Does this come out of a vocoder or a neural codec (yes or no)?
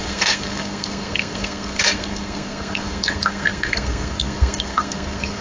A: yes